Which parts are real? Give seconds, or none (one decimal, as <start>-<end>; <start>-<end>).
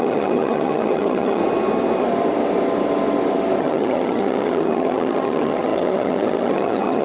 1.4-3.6